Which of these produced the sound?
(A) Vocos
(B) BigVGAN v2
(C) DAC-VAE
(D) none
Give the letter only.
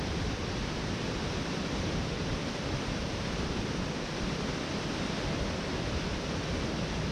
B